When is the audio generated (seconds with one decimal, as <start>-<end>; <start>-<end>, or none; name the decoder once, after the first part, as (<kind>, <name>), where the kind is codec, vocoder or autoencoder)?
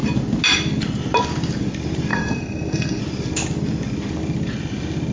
2.1-3.0 (codec, SNAC)